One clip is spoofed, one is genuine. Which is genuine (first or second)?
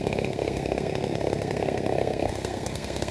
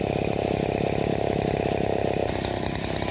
second